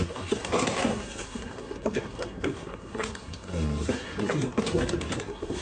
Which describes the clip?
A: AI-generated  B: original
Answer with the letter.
A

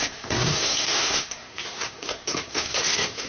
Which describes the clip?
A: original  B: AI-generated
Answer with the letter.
B